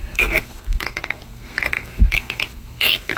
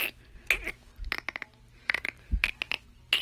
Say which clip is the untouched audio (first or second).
second